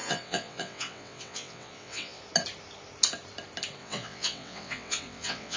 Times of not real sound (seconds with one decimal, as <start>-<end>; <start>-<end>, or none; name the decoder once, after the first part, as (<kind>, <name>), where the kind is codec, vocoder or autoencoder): 0.0-2.2 (vocoder, WaveNeXt); 3.8-5.6